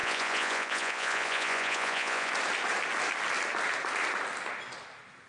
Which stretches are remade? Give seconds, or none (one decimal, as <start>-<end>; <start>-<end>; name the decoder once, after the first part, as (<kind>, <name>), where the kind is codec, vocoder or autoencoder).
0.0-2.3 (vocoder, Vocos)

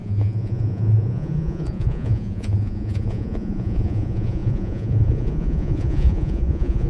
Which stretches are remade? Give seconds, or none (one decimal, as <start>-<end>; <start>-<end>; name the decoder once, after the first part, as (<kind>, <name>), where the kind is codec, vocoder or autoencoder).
0.0-6.9 (vocoder, Vocos)

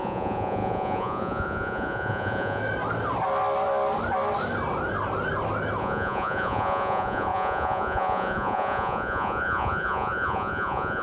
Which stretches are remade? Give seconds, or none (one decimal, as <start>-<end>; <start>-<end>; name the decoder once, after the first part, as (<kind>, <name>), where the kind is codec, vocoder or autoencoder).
0.0-2.6 (vocoder, Vocos); 5.8-11.0

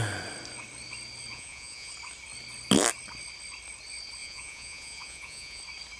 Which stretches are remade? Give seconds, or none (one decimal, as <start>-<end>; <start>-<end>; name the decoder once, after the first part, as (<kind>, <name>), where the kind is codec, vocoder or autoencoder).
1.3-1.9 (vocoder, Vocos); 4.2-5.6

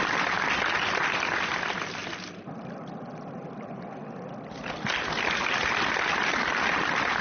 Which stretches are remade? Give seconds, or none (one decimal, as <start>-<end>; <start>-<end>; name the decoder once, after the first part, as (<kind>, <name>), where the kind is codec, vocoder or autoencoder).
none

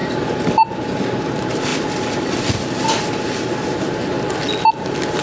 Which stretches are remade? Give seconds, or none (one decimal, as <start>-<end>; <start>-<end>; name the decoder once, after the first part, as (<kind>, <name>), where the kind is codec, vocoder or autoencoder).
none

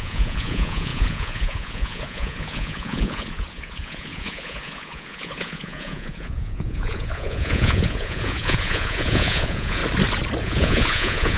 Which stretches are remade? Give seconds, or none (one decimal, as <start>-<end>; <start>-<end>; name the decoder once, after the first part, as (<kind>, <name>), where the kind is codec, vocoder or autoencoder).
0.0-9.8 (vocoder, Vocos); 10.4-11.4

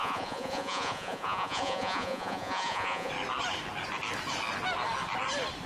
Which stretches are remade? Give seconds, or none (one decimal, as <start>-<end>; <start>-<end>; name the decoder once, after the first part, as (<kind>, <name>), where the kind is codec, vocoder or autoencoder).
0.0-3.1 (vocoder, Vocos)